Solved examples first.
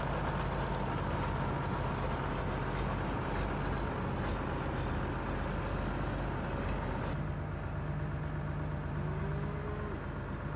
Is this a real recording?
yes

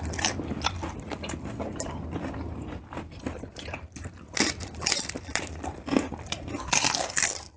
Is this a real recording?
no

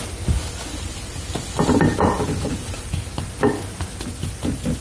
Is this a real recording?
yes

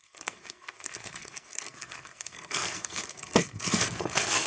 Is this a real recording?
no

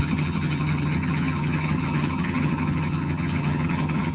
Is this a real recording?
no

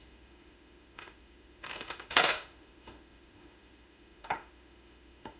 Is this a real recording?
no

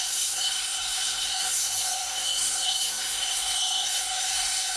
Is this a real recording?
no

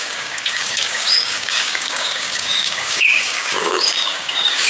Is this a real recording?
no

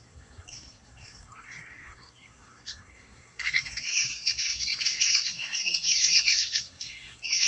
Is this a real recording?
no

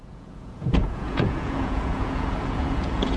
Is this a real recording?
no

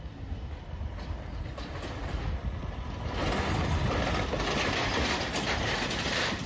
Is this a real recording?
yes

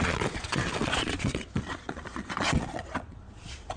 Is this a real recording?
no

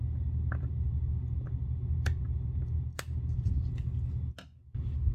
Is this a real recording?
yes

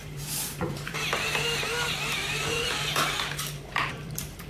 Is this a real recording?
no